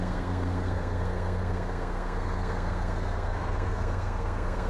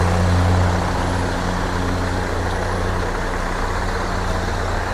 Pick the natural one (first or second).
second